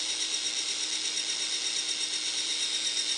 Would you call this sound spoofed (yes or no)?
no